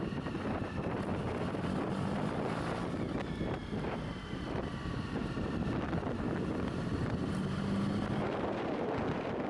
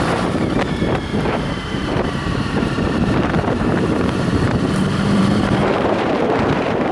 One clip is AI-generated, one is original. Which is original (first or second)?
first